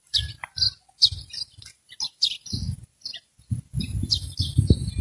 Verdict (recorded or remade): recorded